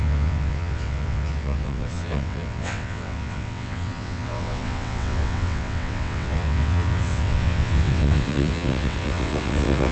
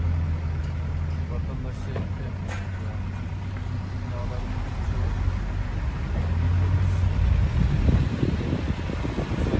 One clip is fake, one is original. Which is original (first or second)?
second